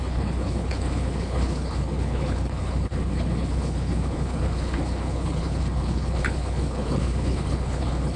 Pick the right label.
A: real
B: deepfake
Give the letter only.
B